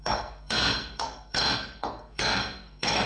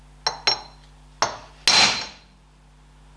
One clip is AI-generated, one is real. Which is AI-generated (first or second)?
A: first